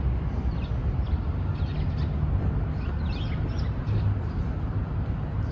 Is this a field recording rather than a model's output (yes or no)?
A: yes